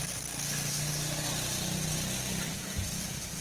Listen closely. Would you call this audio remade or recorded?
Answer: recorded